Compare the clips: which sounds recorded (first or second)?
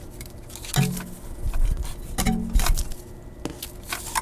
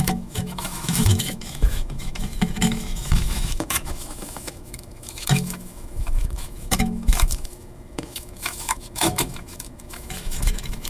first